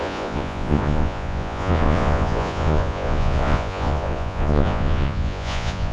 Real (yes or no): no